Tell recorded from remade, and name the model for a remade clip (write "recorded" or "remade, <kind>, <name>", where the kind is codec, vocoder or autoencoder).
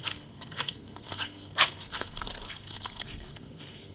remade, codec, SNAC